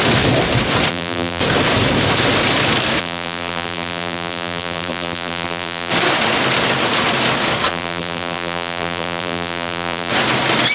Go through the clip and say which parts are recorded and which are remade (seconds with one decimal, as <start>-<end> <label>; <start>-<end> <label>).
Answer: 0.0-0.9 recorded; 0.9-1.4 remade; 1.4-3.0 recorded; 3.0-5.9 remade; 5.9-7.7 recorded; 7.7-10.1 remade; 10.1-10.7 recorded